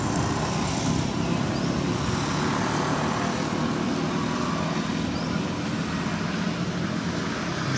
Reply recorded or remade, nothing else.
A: recorded